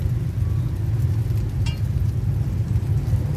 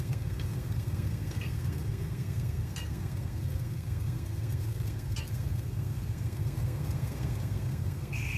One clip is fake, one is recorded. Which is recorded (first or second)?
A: first